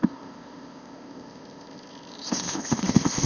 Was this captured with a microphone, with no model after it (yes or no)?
no